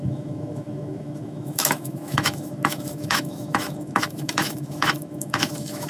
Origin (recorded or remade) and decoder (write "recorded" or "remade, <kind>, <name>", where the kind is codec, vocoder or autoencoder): remade, autoencoder, DAC-VAE